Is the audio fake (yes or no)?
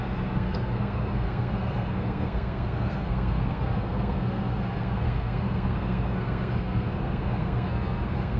yes